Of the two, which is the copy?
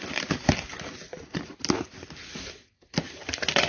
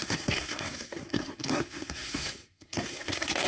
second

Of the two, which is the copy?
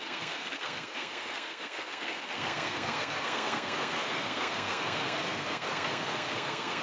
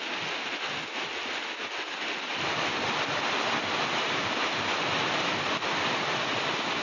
first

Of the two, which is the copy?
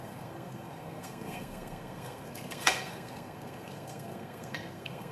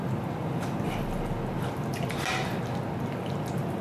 first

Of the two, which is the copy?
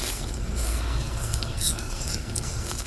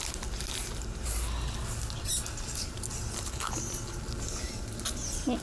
first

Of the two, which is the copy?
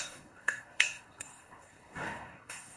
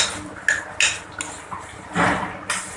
first